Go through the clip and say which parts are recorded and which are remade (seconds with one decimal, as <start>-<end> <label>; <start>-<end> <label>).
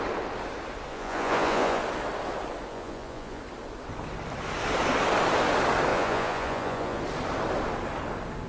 0.0-0.9 recorded; 0.9-1.8 remade; 1.8-2.7 recorded; 2.7-3.4 remade; 3.4-5.9 recorded; 5.9-7.0 remade; 7.0-8.5 recorded